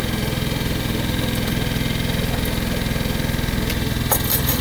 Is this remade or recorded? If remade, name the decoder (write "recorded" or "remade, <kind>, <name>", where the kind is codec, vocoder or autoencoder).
recorded